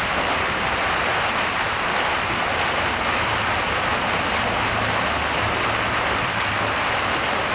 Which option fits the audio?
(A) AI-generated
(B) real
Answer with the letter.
B